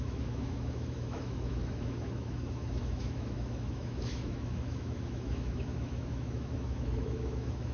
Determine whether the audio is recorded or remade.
remade